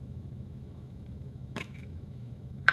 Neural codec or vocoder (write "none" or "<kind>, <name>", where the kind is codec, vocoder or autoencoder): autoencoder, DAC-VAE